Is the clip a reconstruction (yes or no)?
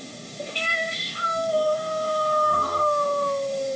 yes